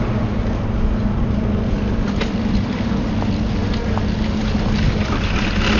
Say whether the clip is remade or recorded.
recorded